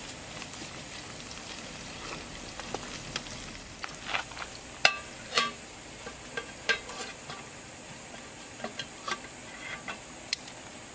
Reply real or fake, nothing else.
fake